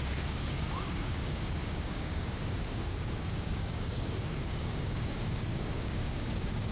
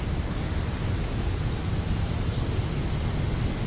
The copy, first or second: first